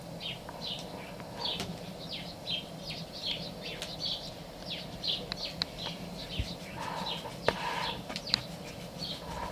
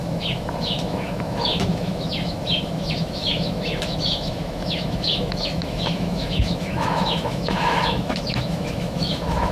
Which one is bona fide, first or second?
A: first